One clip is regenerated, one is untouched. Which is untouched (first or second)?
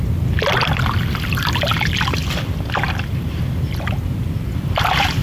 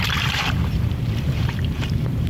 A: first